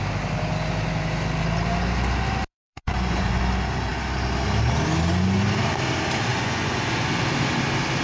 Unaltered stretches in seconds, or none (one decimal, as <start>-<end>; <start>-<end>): 0.0-2.5; 3.4-6.3; 7.2-8.0